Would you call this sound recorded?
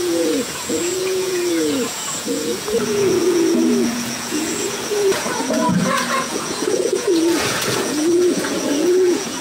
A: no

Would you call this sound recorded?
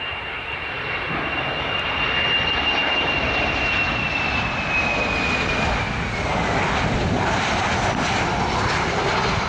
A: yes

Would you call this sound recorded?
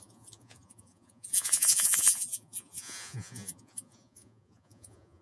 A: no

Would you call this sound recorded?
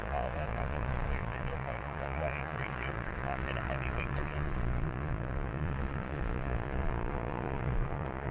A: no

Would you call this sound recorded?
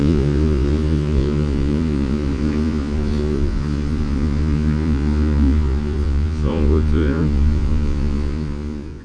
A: no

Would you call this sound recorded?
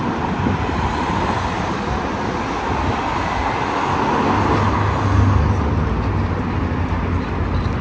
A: yes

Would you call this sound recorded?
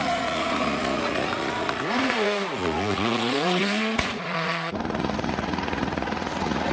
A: no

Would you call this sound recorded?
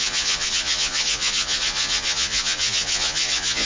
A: no